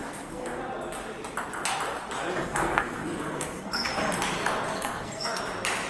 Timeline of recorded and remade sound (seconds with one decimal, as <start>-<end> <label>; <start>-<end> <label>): 0.0-0.6 remade; 0.6-2.4 recorded; 2.4-3.9 remade; 3.9-4.7 recorded; 4.7-5.4 remade; 5.4-5.9 recorded